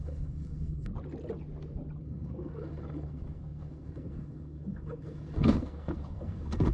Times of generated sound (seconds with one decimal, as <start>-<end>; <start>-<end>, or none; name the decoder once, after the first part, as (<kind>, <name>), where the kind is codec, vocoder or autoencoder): 0.0-0.9 (codec, SNAC); 2.0-6.7